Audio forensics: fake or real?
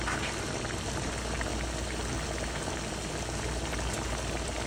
real